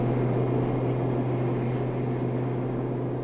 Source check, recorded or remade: recorded